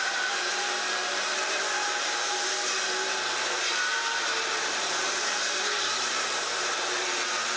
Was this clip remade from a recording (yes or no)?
yes